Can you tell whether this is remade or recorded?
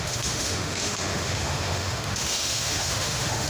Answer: remade